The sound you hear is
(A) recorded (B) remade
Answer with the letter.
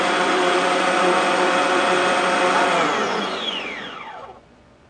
B